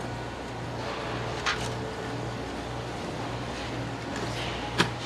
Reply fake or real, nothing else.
real